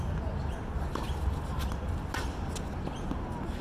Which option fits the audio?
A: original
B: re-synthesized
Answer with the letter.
A